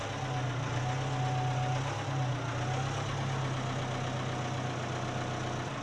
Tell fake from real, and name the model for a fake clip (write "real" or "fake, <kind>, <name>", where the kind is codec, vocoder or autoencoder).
real